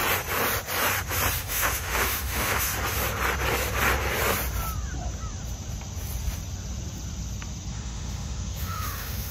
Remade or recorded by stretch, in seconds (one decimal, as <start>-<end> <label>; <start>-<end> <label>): 0.0-1.4 recorded; 1.4-2.7 remade; 2.7-7.7 recorded; 7.7-9.3 remade